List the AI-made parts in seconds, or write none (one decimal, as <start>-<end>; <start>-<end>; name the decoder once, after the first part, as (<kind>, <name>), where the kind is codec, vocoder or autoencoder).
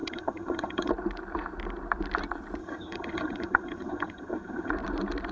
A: 0.0-0.9 (vocoder, HiFi-GAN); 2.6-4.7